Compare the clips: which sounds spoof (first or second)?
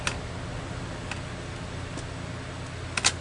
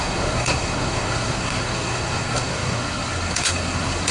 second